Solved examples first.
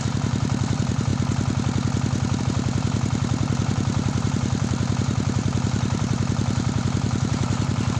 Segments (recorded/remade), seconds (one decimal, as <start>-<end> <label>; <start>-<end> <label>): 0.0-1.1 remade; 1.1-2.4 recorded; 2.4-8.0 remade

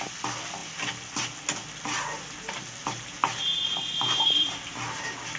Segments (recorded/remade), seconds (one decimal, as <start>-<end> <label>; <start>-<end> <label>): 0.0-3.2 recorded; 3.2-4.6 remade; 4.6-5.4 recorded

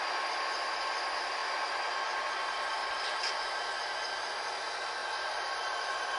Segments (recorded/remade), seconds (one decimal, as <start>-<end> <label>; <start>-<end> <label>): 0.0-2.8 recorded; 2.8-3.5 remade; 3.5-5.0 recorded; 5.0-6.2 remade

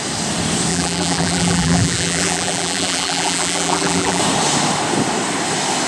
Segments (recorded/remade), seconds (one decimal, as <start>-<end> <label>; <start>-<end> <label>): 0.0-0.7 recorded; 0.7-4.2 remade; 4.2-5.9 recorded

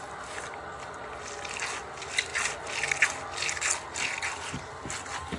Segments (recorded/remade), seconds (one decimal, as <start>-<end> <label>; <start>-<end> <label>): 0.0-5.4 recorded

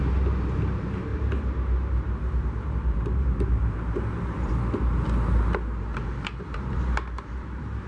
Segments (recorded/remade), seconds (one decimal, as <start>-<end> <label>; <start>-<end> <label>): 0.0-1.1 recorded; 1.1-4.5 remade; 4.5-5.9 recorded; 5.9-7.9 remade

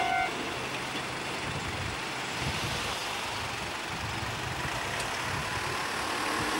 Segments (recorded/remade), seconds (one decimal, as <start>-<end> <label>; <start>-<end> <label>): 0.0-6.6 recorded